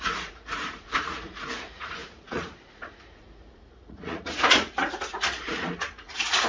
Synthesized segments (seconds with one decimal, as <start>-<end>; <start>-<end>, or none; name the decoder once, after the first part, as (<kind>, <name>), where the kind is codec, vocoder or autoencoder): 0.0-6.5 (vocoder, Vocos)